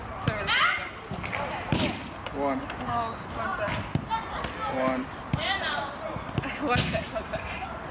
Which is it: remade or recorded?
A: recorded